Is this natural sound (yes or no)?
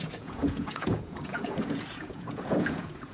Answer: no